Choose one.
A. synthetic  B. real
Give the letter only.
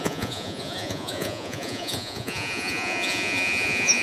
A